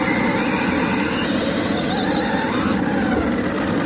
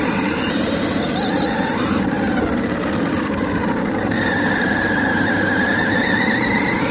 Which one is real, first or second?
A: first